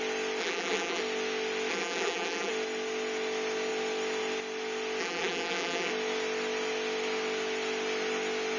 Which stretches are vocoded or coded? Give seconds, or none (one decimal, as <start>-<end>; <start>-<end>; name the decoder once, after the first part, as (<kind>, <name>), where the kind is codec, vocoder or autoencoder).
0.4-1.0 (vocoder, BigVGAN v2); 1.7-2.5; 5.0-5.9